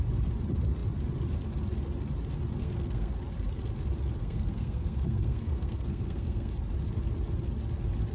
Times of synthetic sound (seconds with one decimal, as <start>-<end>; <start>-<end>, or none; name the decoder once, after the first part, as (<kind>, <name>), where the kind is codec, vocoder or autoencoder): 2.6-3.1 (codec, SNAC); 4.2-6.5